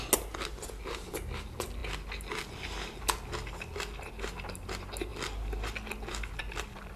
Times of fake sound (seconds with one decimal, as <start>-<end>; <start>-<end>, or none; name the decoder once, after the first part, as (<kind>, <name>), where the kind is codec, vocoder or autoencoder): none